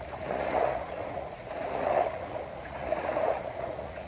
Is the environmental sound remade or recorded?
remade